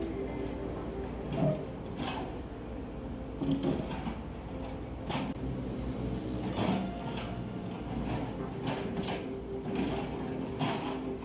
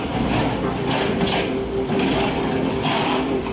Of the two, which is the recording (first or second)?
first